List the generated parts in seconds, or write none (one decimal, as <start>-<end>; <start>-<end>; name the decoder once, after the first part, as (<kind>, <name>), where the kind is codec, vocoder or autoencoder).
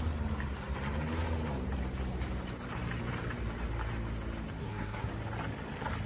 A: 4.6-5.1 (codec, SNAC)